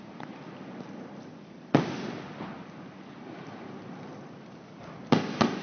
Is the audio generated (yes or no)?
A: no